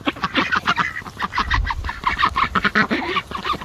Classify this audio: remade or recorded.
recorded